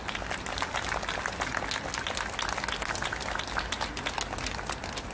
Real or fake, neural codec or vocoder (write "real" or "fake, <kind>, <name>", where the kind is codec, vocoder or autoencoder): real